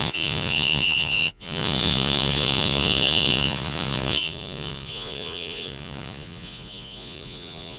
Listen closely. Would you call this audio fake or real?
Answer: fake